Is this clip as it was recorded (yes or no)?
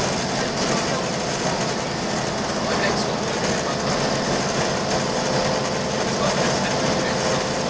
yes